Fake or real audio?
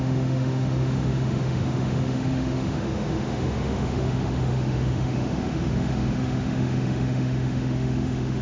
fake